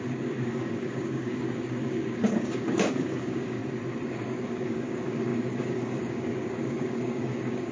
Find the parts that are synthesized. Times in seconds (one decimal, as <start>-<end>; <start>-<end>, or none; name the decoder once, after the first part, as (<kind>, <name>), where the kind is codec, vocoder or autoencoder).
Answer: 0.0-3.6 (codec, DAC); 4.1-7.7